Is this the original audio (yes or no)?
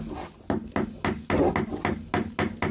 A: yes